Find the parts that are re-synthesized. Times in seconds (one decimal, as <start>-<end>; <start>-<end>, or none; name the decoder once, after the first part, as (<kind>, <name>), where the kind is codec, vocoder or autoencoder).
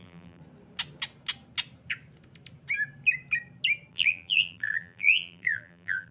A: 0.0-0.4 (vocoder, BigVGAN v2); 3.9-6.1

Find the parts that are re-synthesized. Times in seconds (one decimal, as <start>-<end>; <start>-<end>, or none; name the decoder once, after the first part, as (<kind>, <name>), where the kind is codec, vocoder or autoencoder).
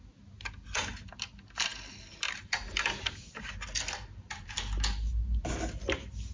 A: none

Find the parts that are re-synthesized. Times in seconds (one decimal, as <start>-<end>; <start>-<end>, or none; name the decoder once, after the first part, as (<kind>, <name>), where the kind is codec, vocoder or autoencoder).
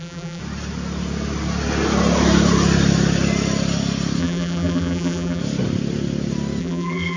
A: 0.0-0.4 (vocoder, BigVGAN v2); 4.2-5.4; 6.6-7.2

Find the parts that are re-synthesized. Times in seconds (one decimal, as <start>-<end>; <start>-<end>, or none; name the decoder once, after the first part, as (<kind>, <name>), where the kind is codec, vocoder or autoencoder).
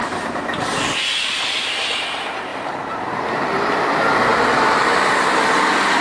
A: 0.0-0.8 (vocoder, BigVGAN v2); 2.5-3.9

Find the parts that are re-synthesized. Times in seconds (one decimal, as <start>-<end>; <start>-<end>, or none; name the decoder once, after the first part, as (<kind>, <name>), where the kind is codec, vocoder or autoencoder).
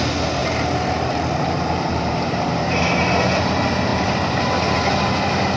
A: 0.4-2.8 (vocoder, BigVGAN v2); 3.9-4.6